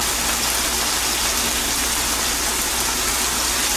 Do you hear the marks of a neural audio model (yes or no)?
no